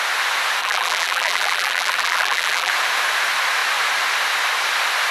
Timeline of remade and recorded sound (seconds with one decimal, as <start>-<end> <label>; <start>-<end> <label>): 0.0-0.6 recorded; 0.6-2.7 remade; 2.7-5.1 recorded